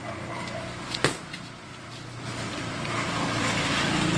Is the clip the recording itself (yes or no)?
yes